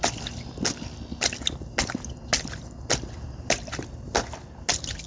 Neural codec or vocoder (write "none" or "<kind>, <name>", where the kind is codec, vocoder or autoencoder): none